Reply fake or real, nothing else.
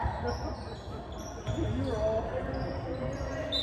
real